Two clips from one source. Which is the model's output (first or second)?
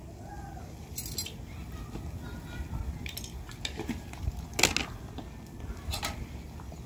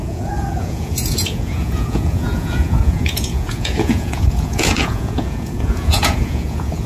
second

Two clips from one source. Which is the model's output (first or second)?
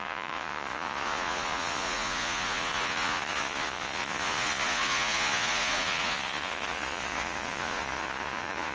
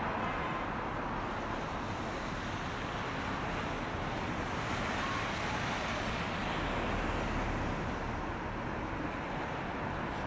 first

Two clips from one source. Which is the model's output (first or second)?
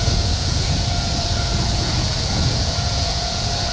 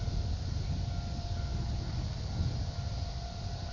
first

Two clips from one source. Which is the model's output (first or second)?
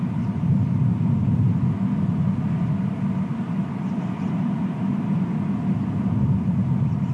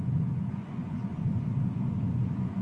second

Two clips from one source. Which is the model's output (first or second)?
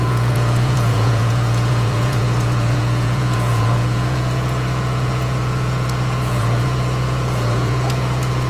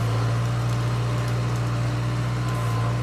first